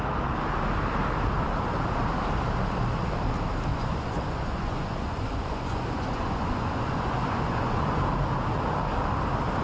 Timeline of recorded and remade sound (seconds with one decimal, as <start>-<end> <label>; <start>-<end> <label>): 0.0-3.7 recorded; 3.7-7.9 remade; 7.9-9.6 recorded